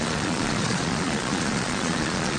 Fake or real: fake